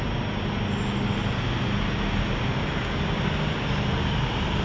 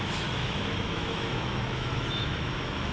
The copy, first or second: second